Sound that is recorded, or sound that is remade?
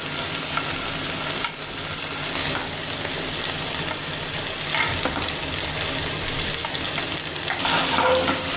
recorded